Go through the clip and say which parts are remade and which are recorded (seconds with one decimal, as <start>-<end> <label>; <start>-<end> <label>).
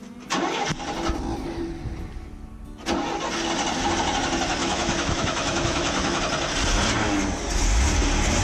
0.0-4.6 recorded; 4.6-6.2 remade; 6.2-8.4 recorded